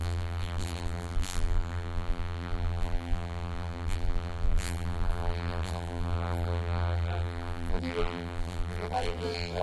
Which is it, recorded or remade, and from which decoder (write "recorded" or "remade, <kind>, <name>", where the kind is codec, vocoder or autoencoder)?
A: remade, vocoder, BigVGAN v2